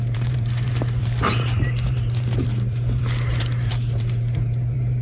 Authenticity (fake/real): fake